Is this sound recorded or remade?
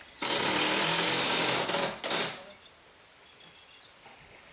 recorded